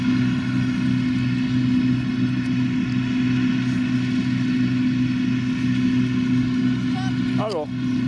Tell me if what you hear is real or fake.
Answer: real